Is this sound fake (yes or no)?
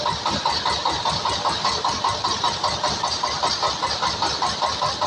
no